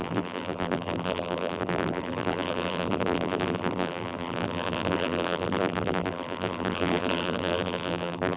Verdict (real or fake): fake